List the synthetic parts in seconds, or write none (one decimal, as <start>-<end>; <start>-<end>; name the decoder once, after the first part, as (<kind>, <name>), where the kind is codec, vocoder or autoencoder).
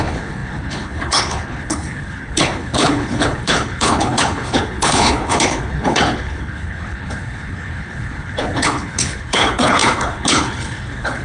0.0-11.2 (codec, HILCodec)